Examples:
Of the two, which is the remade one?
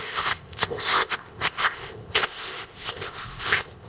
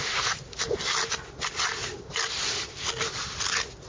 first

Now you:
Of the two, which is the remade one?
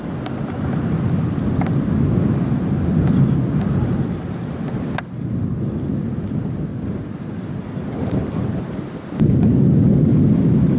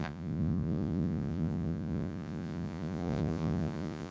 second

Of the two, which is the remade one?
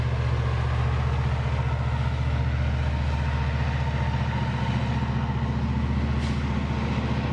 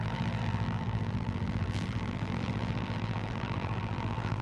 second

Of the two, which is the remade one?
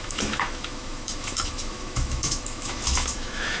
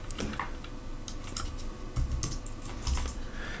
first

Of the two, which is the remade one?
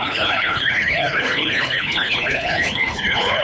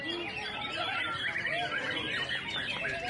first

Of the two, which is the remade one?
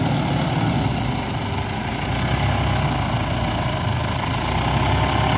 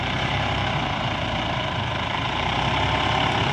second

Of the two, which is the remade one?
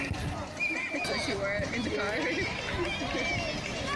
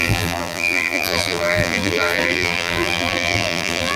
second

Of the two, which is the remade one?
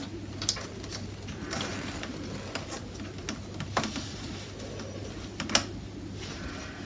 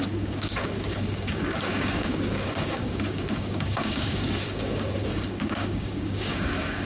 second